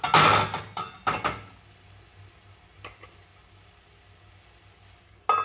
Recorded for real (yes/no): yes